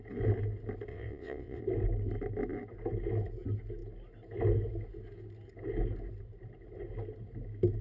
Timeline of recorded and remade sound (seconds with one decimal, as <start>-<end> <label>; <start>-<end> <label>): 0.0-0.9 recorded; 0.9-1.6 remade; 1.6-7.8 recorded